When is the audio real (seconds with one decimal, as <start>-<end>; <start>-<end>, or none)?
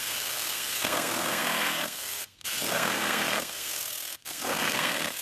none